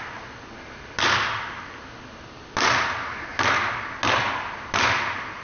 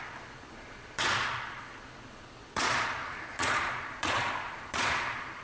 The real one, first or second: first